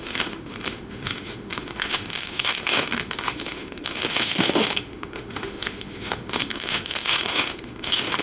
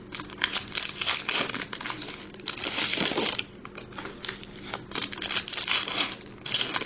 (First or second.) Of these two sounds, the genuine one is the second